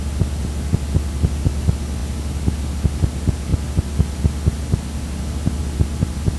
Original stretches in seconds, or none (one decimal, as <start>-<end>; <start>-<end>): 0.0-6.4